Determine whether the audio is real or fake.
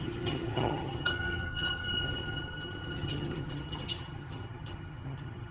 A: fake